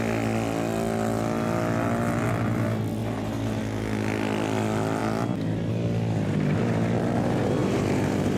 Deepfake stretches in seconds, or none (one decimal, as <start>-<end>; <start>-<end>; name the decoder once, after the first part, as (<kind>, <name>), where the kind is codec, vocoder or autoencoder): 3.0-3.6 (vocoder, BigVGAN v2); 7.6-8.4